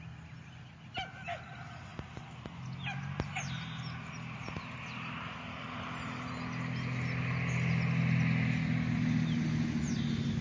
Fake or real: real